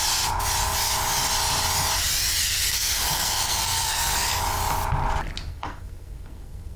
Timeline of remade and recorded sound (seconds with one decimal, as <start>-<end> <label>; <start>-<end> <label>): 0.0-2.4 recorded; 2.4-4.4 remade; 4.4-5.5 recorded; 5.5-6.8 remade